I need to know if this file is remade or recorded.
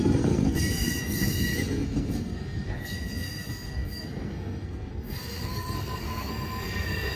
remade